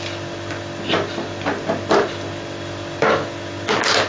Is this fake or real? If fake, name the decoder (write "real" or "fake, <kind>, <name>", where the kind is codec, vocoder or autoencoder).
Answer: real